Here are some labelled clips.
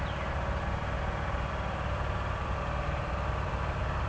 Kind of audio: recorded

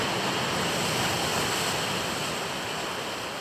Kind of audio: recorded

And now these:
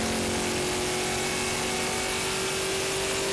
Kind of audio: recorded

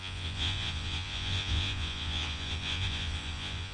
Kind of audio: remade